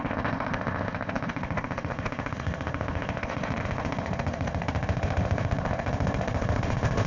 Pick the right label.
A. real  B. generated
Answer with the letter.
B